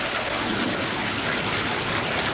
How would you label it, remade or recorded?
recorded